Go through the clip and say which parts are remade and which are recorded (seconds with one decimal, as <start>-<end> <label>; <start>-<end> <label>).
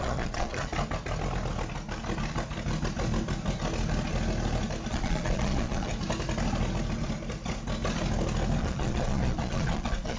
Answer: 0.0-0.7 remade; 0.7-4.9 recorded; 4.9-5.9 remade; 5.9-8.6 recorded; 8.6-10.2 remade